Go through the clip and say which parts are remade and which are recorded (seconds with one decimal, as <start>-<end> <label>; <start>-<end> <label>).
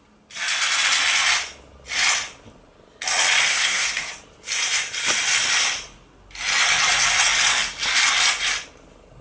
0.0-3.5 recorded; 3.5-4.1 remade; 4.1-9.2 recorded